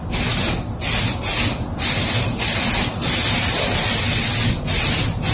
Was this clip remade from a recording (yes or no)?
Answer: no